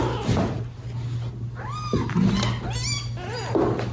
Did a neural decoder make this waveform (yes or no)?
no